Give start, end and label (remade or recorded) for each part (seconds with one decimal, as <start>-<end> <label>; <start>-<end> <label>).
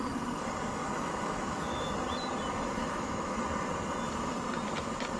0.0-0.8 recorded; 0.8-1.8 remade; 1.8-2.8 recorded; 2.8-3.4 remade; 3.4-5.2 recorded